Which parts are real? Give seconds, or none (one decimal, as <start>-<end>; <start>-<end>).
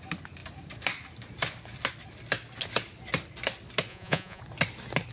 0.0-3.9; 4.4-5.1